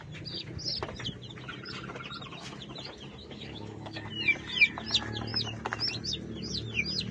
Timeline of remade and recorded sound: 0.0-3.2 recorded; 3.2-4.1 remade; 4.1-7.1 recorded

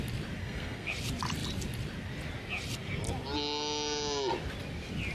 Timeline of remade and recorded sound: 0.0-0.4 recorded; 0.4-0.9 remade; 0.9-5.1 recorded

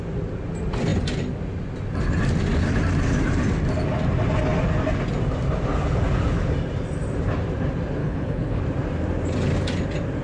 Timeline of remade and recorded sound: 0.0-8.0 recorded; 8.0-8.6 remade; 8.6-10.2 recorded

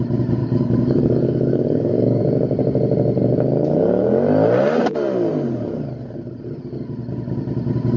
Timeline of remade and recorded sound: 0.0-0.4 recorded; 0.4-2.2 remade; 2.2-8.0 recorded

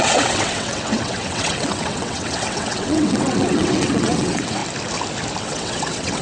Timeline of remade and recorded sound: 0.0-4.6 remade; 4.6-5.4 recorded; 5.4-6.2 remade

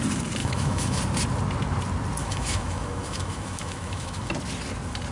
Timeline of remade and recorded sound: 0.0-0.4 recorded; 0.4-1.0 remade; 1.0-2.2 recorded; 2.2-4.3 remade; 4.3-5.1 recorded